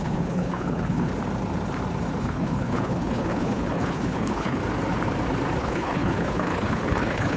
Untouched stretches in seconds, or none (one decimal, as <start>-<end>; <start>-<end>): 1.1-2.2; 4.6-5.6